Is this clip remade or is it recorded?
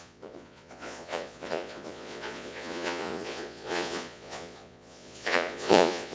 remade